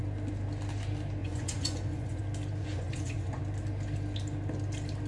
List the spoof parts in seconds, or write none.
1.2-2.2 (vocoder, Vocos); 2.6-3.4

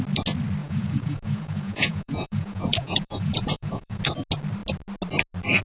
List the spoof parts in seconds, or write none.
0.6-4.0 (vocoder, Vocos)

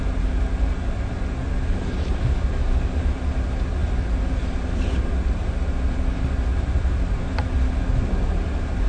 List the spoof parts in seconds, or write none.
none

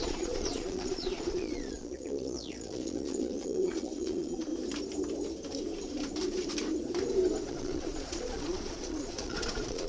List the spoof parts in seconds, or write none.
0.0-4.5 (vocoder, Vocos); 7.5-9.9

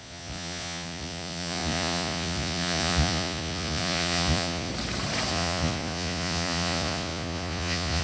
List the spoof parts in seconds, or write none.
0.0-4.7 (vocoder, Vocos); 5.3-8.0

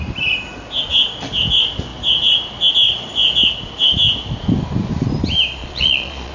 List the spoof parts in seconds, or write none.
5.6-6.3 (vocoder, Vocos)

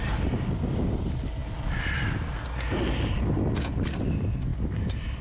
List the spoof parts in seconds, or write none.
none

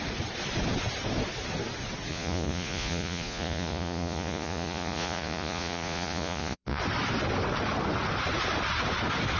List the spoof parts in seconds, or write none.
2.1-6.8 (vocoder, Vocos)